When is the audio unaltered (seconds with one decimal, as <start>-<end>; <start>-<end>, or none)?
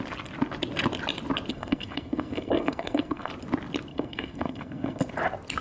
0.0-1.5; 3.3-3.9; 5.0-5.6